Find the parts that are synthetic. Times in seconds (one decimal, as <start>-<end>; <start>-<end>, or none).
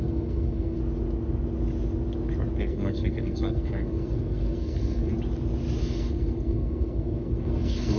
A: 0.0-0.8; 2.6-5.1; 5.8-8.0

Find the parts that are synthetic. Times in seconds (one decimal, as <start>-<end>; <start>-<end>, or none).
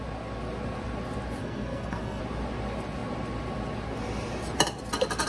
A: 1.4-2.2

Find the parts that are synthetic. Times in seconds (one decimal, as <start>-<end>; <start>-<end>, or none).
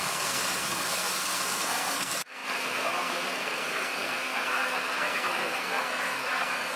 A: 0.0-6.8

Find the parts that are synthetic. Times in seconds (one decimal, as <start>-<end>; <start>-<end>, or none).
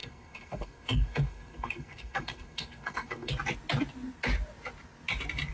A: 0.0-3.3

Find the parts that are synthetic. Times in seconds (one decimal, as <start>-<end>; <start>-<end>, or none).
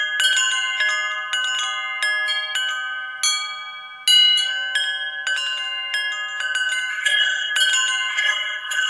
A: 6.9-7.5; 8.1-8.9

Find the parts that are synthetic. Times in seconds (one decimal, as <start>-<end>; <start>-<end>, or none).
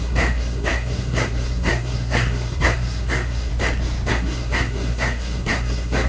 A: 0.0-3.5; 4.1-6.1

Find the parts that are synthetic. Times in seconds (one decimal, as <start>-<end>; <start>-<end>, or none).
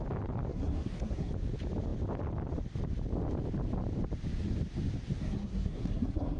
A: 0.5-1.3; 5.2-6.4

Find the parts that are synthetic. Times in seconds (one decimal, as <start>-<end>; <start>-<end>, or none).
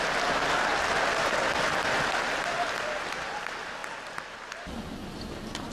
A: none